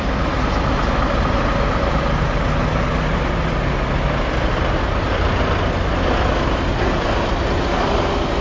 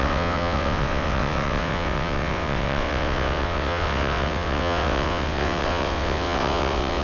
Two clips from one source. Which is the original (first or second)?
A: first